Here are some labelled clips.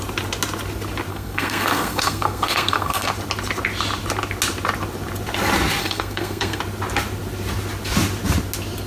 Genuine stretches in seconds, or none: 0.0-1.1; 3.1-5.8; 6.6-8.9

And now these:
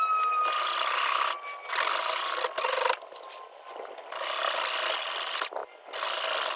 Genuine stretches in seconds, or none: 0.0-6.6

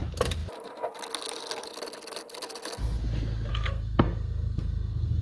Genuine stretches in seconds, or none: 0.0-3.5

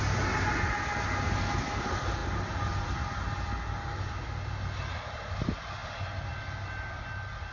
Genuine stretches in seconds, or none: 0.0-7.5

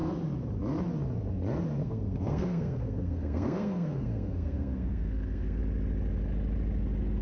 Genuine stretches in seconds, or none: 0.0-1.8; 5.6-7.2